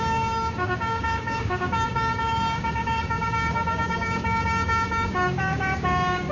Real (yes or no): no